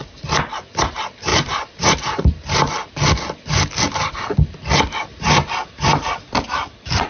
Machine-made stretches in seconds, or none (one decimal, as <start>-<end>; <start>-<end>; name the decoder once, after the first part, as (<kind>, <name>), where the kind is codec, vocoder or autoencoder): 1.3-2.9 (vocoder, BigVGAN v2); 5.1-7.1